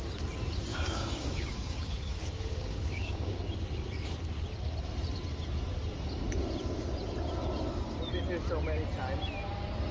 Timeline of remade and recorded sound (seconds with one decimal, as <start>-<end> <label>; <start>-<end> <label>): 0.0-0.7 recorded; 0.7-3.4 remade; 3.4-9.9 recorded